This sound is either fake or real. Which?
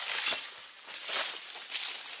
real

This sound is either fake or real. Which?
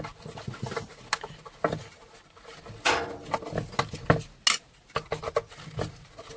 real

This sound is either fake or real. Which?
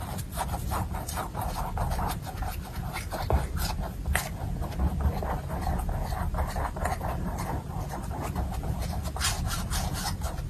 real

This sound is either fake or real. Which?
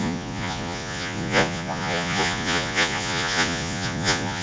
fake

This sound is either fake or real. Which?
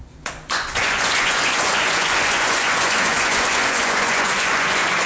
fake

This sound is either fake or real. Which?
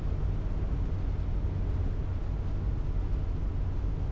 real